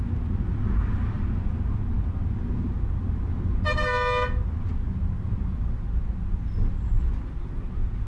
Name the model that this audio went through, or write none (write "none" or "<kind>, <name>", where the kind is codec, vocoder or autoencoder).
none